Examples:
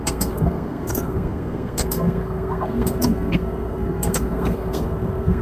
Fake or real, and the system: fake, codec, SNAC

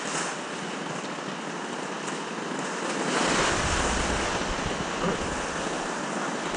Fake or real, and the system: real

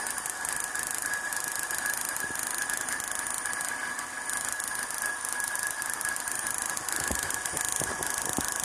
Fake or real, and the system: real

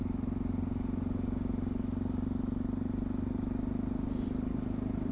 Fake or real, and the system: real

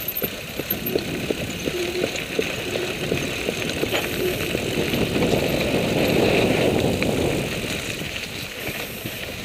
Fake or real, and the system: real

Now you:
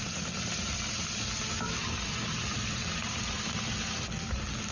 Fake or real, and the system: real